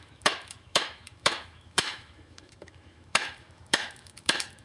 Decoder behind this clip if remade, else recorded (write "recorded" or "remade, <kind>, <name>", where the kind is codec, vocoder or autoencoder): remade, autoencoder, DAC-VAE